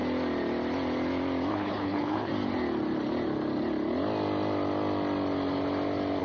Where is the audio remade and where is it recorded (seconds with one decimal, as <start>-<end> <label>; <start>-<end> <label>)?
0.0-1.5 recorded; 1.5-2.3 remade; 2.3-6.2 recorded